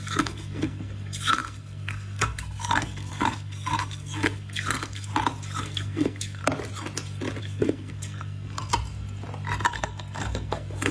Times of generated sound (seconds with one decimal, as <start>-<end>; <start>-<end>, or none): 0.0-5.1; 5.6-6.4; 7.4-8.7; 9.7-10.9